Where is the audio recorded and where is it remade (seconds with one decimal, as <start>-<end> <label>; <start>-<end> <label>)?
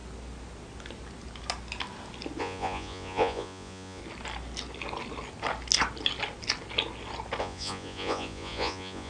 0.0-2.4 recorded; 2.4-4.0 remade; 4.0-7.4 recorded; 7.4-9.1 remade